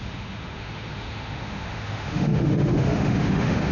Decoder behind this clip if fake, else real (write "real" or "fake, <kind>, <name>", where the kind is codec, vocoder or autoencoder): fake, autoencoder, DAC-VAE